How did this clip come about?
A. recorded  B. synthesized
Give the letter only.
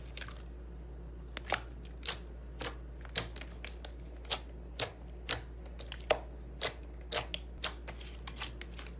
A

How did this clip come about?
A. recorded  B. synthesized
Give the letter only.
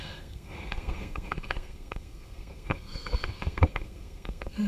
B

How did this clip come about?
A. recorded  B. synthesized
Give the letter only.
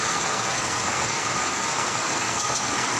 B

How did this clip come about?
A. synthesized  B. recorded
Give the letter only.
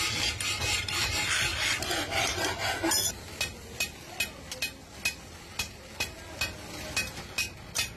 B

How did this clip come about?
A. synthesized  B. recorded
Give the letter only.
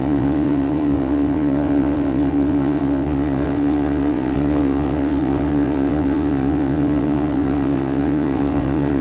A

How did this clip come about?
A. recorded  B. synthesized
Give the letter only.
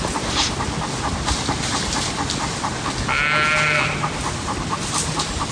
A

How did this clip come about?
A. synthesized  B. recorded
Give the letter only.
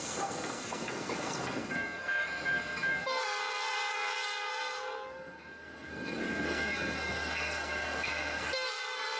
A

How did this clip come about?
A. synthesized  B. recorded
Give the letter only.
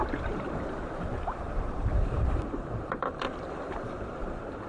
A